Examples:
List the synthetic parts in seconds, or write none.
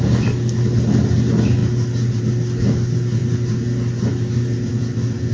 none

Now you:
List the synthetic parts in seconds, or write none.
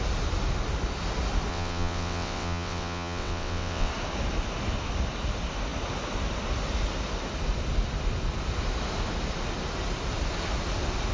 1.5-3.9 (vocoder, WaveNeXt)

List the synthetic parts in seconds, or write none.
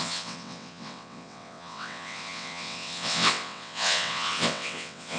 0.0-5.2 (vocoder, WaveNeXt)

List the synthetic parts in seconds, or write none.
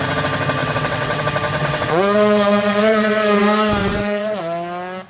0.6-1.2 (vocoder, WaveNeXt); 1.6-3.4; 3.8-4.4